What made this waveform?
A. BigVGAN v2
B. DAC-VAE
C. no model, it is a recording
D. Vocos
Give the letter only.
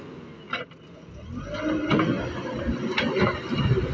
C